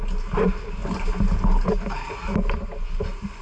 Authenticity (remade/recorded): recorded